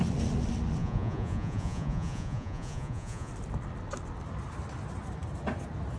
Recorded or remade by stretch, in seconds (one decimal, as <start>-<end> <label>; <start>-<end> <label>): 0.0-0.8 recorded; 0.8-3.3 remade; 3.3-6.0 recorded